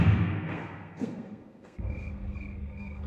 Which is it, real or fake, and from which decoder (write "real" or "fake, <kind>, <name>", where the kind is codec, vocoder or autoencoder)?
fake, codec, SNAC